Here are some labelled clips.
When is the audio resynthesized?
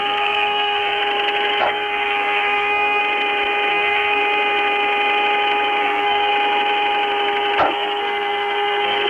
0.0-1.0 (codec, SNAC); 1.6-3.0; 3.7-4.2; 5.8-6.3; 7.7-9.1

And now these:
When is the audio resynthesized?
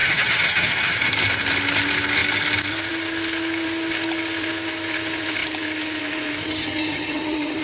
0.0-1.1 (vocoder, HiFi-GAN); 6.4-7.6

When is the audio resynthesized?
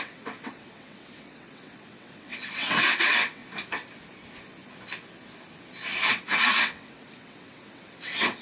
0.0-3.4 (vocoder, WaveNeXt); 6.1-8.4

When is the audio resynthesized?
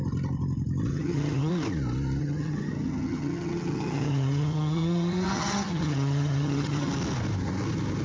0.9-1.5 (vocoder, HiFi-GAN); 2.2-6.9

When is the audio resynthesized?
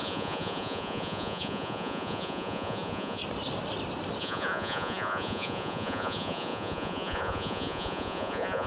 0.0-3.2 (vocoder, Vocos); 4.2-8.7